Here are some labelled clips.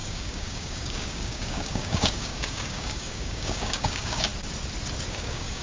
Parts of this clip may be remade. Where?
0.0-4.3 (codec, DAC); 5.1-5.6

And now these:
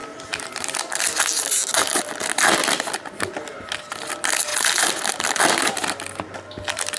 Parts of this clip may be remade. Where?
none

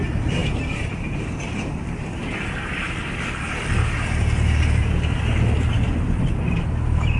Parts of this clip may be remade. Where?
none